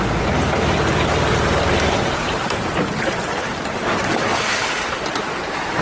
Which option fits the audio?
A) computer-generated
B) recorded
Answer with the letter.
B